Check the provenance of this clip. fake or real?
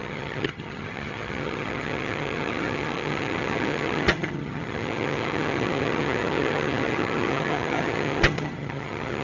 fake